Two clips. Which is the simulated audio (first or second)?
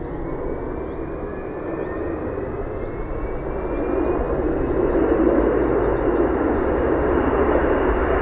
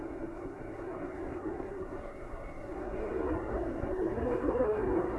second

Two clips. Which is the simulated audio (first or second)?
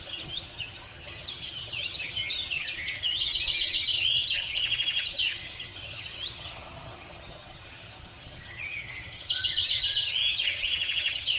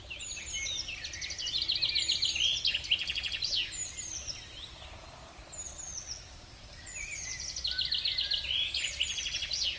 first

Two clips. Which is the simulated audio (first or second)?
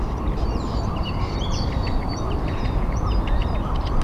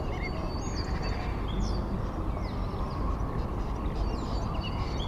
first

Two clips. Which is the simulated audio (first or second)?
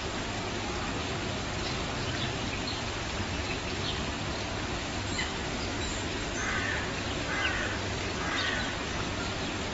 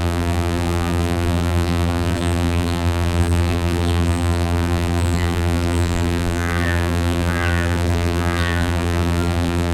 second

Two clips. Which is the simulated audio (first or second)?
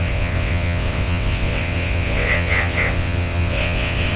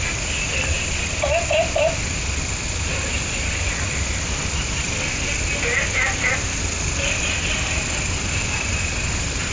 first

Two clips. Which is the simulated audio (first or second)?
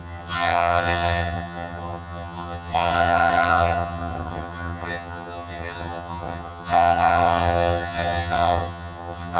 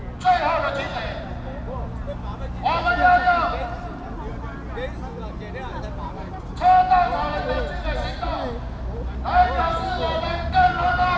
first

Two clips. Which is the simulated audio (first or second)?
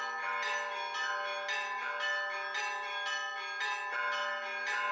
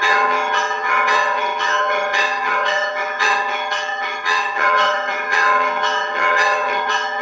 second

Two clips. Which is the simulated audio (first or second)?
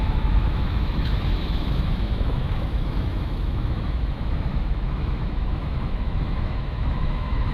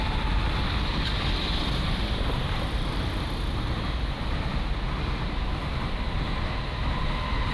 first